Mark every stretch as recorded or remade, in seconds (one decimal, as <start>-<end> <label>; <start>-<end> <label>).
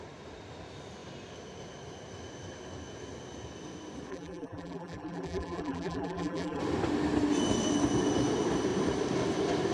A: 0.0-4.1 recorded; 4.1-6.6 remade; 6.6-9.7 recorded